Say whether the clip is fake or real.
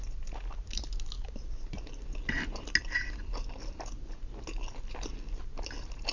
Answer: real